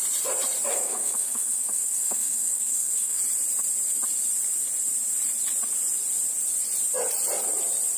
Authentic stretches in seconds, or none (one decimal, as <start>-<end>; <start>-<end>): 0.0-0.7; 3.2-8.0